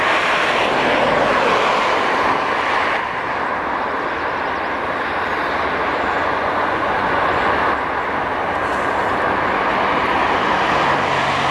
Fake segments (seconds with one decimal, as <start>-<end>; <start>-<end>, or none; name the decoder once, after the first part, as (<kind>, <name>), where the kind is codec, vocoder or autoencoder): 6.2-7.5 (vocoder, Vocos)